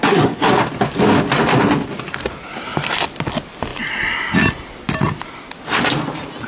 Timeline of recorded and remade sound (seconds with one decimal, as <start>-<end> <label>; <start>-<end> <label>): 0.0-0.5 remade; 0.5-6.5 recorded